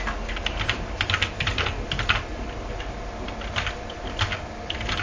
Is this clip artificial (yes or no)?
no